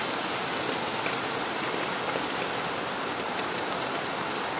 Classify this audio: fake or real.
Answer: real